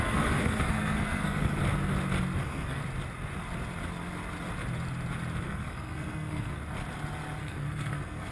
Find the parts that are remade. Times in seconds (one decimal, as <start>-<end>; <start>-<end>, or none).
0.0-1.6; 2.4-2.8; 5.4-6.6; 7.4-8.3